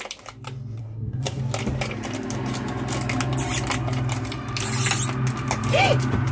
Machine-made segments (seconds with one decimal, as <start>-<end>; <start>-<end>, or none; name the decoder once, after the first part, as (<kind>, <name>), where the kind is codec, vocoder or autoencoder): 0.8-1.4 (codec, SNAC)